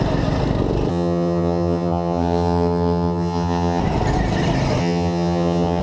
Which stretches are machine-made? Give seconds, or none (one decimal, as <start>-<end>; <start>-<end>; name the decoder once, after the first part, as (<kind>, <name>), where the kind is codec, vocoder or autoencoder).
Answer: 0.9-3.8 (vocoder, HiFi-GAN); 4.8-5.8